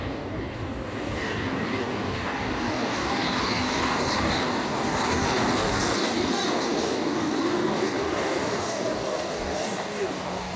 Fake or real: fake